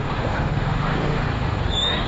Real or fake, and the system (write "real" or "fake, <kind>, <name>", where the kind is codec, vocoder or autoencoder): fake, autoencoder, DAC-VAE